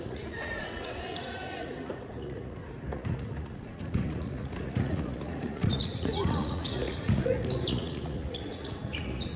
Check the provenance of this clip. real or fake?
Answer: fake